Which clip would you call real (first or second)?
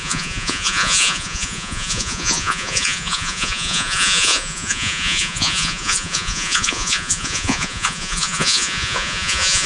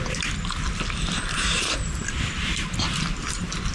second